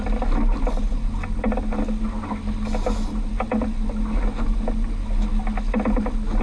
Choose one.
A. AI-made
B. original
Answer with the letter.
B